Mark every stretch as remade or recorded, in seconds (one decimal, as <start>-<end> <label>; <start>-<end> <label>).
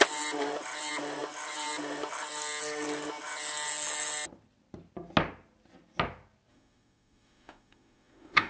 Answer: 0.0-6.5 recorded; 6.5-8.5 remade